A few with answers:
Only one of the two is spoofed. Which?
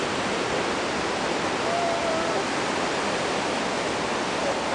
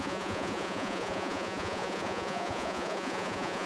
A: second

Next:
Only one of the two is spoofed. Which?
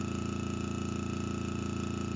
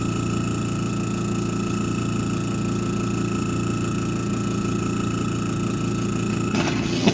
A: second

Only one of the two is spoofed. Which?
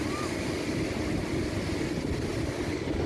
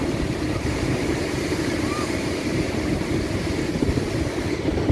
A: second